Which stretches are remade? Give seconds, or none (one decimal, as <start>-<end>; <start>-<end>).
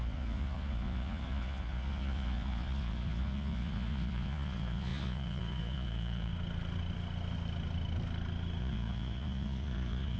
0.0-6.3; 8.6-10.2